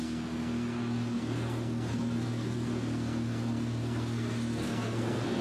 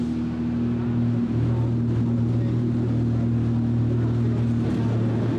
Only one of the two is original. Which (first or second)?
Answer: second